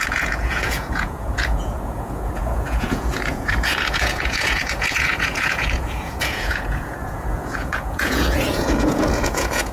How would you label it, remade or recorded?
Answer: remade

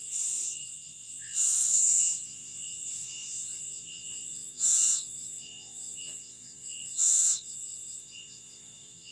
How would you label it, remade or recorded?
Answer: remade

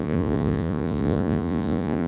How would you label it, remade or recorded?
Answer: remade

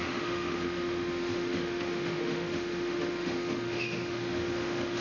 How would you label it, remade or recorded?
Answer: remade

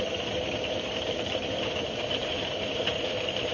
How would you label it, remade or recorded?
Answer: remade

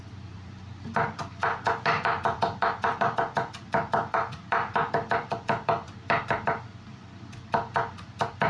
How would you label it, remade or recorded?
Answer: remade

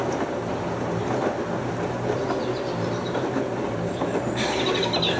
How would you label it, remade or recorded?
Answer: recorded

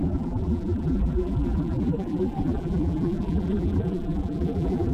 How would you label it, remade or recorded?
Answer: remade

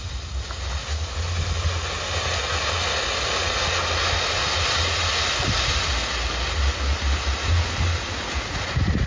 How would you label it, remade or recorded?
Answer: recorded